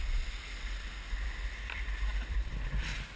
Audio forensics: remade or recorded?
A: recorded